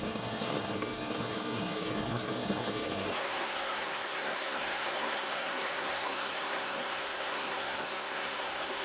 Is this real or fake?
fake